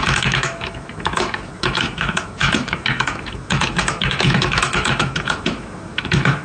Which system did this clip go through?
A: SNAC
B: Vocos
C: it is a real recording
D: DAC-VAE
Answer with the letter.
D